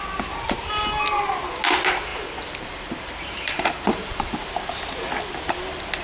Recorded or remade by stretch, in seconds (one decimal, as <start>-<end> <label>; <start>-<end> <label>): 0.0-2.1 recorded; 2.1-4.5 remade; 4.5-6.0 recorded